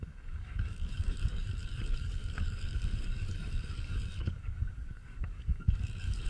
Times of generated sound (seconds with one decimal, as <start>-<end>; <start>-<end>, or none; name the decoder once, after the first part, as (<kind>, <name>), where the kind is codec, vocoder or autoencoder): 0.0-6.3 (codec, DAC)